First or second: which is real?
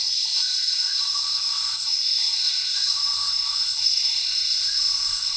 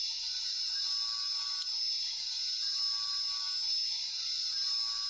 second